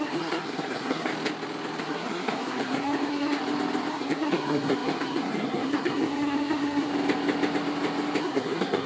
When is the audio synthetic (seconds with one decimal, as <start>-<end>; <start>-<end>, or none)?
0.0-1.1; 1.8-3.4; 3.9-6.9; 8.2-8.9